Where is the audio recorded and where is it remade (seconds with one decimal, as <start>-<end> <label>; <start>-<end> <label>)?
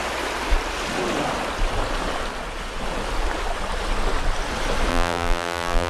0.0-4.9 recorded; 4.9-5.9 remade